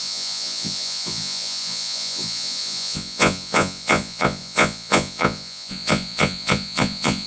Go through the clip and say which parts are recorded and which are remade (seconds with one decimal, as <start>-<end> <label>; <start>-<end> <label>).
0.0-7.3 remade